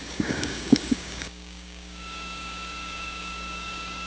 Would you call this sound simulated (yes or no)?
yes